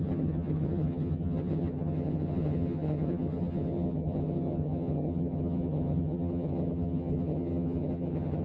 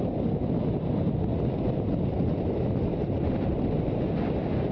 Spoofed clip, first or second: first